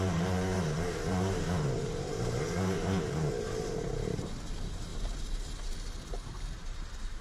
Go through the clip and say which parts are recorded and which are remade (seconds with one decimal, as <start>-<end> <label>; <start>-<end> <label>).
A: 0.0-4.9 remade; 4.9-6.1 recorded; 6.1-7.2 remade